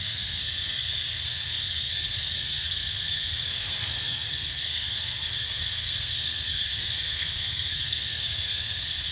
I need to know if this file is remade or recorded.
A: remade